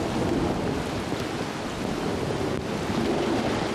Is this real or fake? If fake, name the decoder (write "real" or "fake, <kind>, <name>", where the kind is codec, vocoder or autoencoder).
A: real